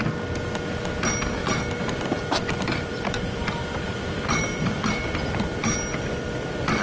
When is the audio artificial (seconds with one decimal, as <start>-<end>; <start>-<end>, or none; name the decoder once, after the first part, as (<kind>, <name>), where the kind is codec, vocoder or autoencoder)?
1.4-4.5 (vocoder, BigVGAN v2)

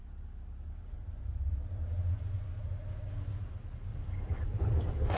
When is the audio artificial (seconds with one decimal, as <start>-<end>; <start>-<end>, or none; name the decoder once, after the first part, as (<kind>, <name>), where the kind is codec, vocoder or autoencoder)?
3.9-5.2 (vocoder, BigVGAN v2)

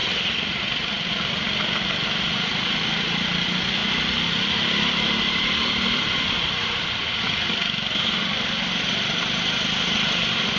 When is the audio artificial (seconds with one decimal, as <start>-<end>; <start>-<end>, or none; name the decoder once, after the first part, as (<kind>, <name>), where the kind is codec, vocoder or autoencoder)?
3.8-7.2 (vocoder, BigVGAN v2)